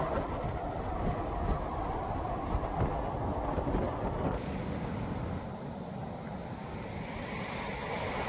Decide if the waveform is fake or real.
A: real